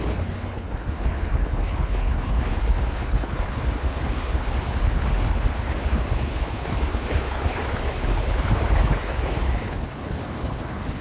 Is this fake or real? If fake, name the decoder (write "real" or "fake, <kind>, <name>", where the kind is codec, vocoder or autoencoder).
fake, codec, HILCodec